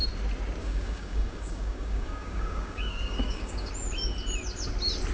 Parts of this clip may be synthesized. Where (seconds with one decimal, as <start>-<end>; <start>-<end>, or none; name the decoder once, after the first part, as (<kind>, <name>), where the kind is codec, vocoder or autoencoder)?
0.6-3.7 (codec, DAC)